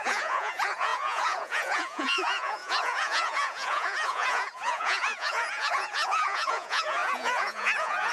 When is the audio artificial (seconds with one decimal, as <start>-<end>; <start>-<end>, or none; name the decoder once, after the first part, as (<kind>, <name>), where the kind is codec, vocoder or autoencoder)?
0.0-8.1 (vocoder, Vocos)